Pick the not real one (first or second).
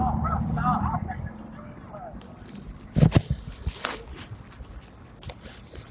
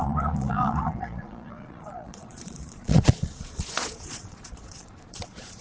second